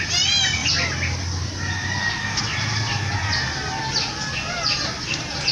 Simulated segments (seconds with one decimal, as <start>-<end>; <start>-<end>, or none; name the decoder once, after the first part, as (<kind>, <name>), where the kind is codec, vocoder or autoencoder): none